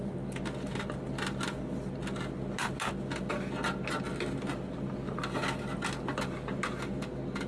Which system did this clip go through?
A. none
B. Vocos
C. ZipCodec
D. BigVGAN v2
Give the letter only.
A